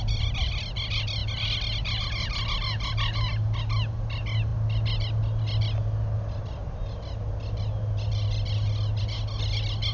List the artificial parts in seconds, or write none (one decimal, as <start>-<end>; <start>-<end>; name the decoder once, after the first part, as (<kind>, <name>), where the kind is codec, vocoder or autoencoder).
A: none